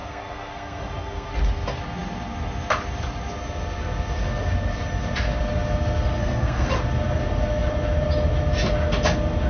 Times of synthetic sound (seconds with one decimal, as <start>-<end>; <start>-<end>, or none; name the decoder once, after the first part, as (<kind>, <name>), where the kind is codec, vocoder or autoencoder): 0.0-1.3 (codec, SNAC); 6.2-6.7